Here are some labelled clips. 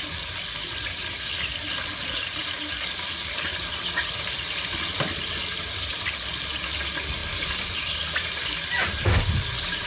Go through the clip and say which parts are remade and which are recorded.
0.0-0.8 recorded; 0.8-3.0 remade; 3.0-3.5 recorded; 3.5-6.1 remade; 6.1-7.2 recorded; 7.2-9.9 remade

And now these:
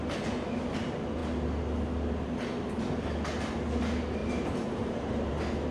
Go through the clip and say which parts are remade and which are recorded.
0.0-4.2 recorded; 4.2-5.3 remade; 5.3-5.7 recorded

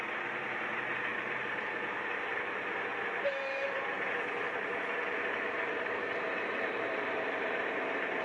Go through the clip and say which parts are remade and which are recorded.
0.0-8.2 remade

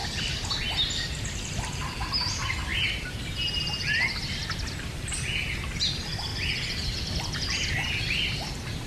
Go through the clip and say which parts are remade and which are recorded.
0.0-1.5 recorded; 1.5-8.9 remade

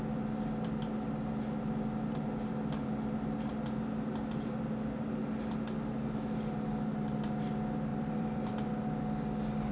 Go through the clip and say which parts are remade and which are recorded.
0.0-7.9 recorded; 7.9-8.5 remade; 8.5-9.7 recorded